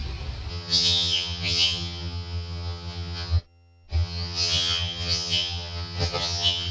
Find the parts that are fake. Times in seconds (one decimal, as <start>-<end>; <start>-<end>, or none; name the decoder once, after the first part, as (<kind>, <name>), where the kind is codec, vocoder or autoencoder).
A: 0.5-6.7 (vocoder, HiFi-GAN)